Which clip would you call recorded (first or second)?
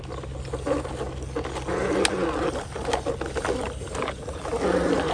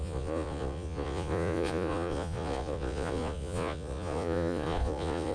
first